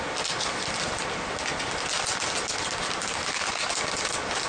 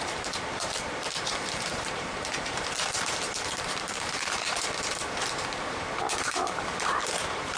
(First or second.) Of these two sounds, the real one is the first